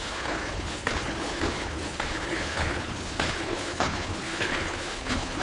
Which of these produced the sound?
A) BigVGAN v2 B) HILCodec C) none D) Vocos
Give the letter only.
B